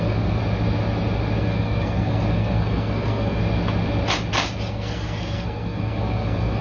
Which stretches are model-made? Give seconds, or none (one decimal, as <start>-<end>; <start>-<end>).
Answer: 0.0-0.4; 1.4-3.4; 4.7-6.6

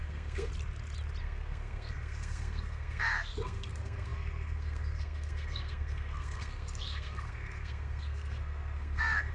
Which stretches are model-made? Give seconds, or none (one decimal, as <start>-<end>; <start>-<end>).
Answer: 0.0-0.5; 1.2-9.3